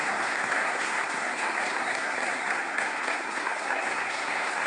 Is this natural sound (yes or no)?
no